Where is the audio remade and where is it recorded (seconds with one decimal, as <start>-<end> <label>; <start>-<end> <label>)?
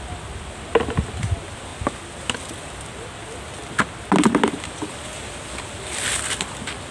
0.0-6.9 recorded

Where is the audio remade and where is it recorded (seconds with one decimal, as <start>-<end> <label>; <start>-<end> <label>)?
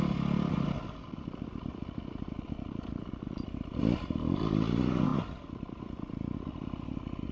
0.0-7.3 recorded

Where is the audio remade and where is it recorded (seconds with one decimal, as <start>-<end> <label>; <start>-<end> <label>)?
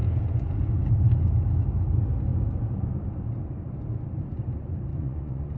0.0-4.9 recorded; 4.9-5.6 remade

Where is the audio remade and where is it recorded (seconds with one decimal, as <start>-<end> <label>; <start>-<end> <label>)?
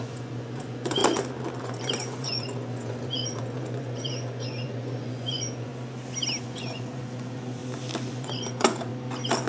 0.0-1.0 remade; 1.0-1.6 recorded; 1.6-5.7 remade; 5.7-6.4 recorded; 6.4-7.6 remade; 7.6-8.1 recorded; 8.1-8.9 remade; 8.9-9.5 recorded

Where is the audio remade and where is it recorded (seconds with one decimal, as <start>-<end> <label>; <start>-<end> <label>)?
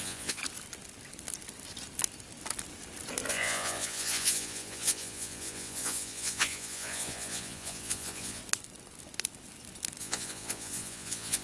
0.0-0.4 remade; 0.4-3.3 recorded; 3.3-8.4 remade; 8.4-10.0 recorded; 10.0-11.4 remade